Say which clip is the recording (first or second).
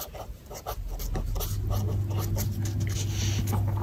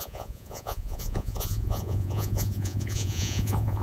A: first